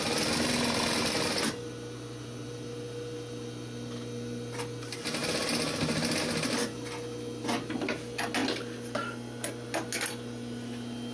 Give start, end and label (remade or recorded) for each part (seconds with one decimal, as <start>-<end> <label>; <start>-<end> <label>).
0.0-11.1 recorded